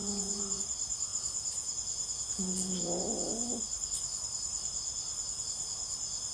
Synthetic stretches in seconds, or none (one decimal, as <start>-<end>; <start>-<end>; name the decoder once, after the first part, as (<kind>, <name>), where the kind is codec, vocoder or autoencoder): 0.0-0.6 (vocoder, Vocos); 1.1-3.0